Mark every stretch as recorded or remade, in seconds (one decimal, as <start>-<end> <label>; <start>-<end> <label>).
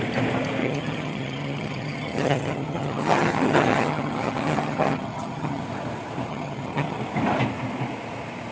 0.0-0.6 recorded; 0.6-5.6 remade; 5.6-6.3 recorded; 6.3-7.0 remade; 7.0-8.5 recorded